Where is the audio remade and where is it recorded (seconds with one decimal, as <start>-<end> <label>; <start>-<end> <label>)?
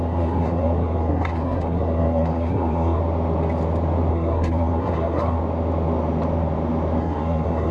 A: 0.0-3.0 remade; 3.0-4.1 recorded; 4.1-5.4 remade; 5.4-7.0 recorded; 7.0-7.7 remade